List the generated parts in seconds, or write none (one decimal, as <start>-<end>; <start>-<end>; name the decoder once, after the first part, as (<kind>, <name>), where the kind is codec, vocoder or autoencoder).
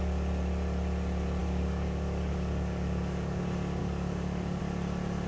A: 1.4-3.4 (codec, DAC); 3.8-4.6